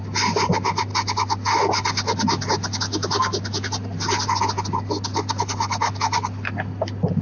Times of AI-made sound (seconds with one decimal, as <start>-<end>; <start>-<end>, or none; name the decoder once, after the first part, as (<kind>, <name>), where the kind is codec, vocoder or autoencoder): none